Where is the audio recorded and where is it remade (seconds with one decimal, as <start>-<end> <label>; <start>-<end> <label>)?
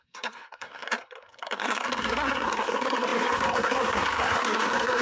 0.0-5.0 remade